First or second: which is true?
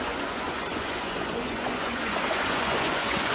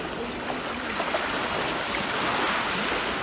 second